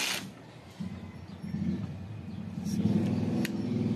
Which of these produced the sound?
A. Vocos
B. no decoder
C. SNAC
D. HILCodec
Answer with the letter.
B